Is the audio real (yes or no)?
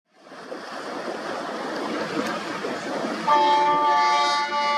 yes